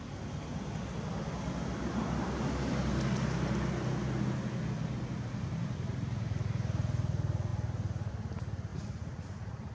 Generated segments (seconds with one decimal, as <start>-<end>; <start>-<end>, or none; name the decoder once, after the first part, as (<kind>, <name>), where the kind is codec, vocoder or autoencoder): 8.7-9.7 (vocoder, Vocos)